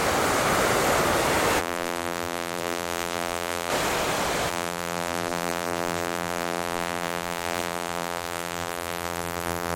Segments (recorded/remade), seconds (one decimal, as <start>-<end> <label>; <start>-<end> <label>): 0.0-1.6 recorded; 1.6-3.7 remade; 3.7-4.5 recorded; 4.5-9.8 remade